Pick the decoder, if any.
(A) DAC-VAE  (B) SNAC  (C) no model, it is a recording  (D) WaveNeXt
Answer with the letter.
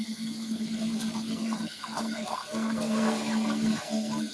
B